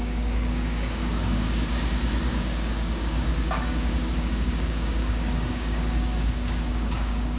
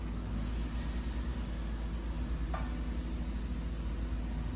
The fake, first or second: first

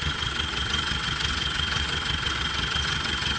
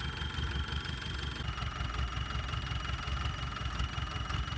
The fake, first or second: first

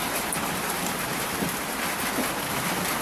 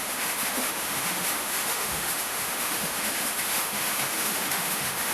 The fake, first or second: second